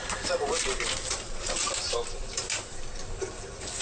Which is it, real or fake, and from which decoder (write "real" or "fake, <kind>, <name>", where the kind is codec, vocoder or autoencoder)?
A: fake, vocoder, BigVGAN v2